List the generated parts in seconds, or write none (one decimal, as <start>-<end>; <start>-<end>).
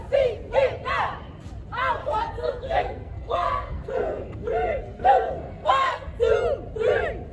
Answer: 2.0-6.2